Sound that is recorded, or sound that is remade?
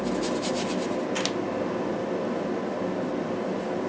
recorded